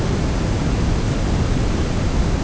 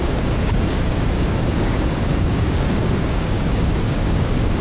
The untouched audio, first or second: first